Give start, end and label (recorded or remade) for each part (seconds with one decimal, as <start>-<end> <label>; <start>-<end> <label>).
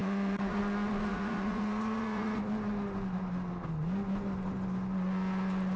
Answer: 0.0-0.6 remade; 0.6-1.1 recorded; 1.1-2.4 remade; 2.4-5.8 recorded